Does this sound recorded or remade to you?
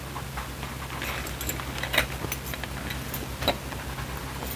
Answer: recorded